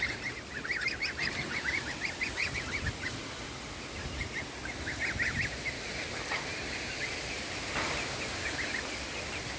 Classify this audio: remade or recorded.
recorded